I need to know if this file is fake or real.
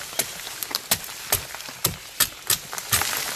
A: real